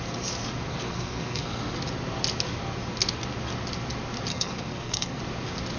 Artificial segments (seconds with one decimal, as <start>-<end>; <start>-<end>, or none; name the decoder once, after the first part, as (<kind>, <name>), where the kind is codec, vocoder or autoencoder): 0.7-1.6 (codec, SNAC); 4.3-5.2